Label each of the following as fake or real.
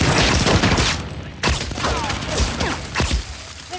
real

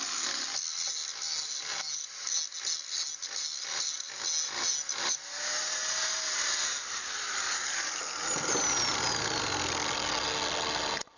real